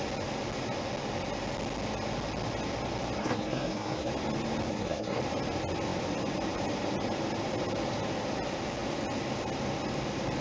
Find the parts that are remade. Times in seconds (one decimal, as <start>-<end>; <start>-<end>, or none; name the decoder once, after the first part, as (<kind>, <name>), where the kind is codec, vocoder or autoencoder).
3.2-4.1 (codec, SNAC); 4.7-5.2